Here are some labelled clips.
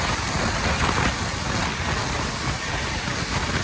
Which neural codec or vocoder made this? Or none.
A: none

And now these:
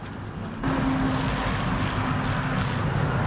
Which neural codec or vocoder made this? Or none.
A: none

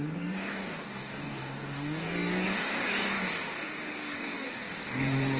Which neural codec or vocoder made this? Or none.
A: codec, DAC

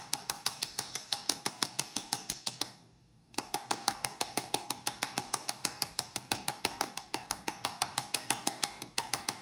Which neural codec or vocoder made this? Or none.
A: codec, DAC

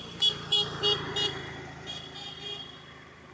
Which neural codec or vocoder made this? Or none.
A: none